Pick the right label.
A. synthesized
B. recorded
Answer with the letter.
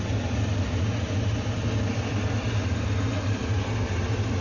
B